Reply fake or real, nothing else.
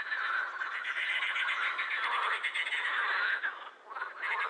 real